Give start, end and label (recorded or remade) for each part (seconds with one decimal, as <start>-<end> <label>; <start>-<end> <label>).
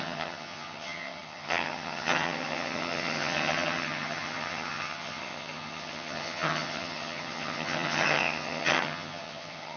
0.0-9.8 remade